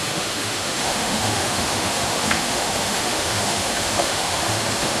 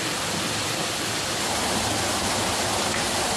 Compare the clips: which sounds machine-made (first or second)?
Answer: first